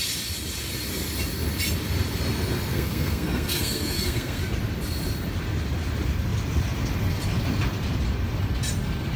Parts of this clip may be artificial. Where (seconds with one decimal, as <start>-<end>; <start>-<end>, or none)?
2.7-4.4